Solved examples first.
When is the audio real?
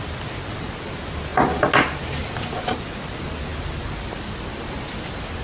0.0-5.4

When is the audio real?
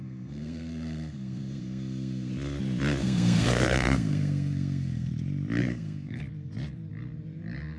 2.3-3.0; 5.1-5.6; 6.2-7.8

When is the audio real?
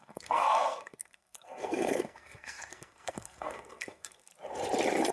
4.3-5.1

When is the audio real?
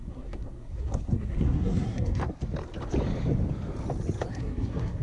2.2-4.3